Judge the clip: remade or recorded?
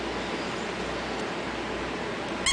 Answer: recorded